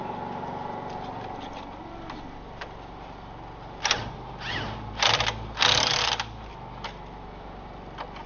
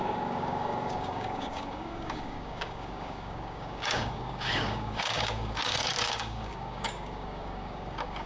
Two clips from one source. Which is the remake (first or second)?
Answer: second